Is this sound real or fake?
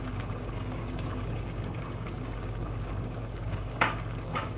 fake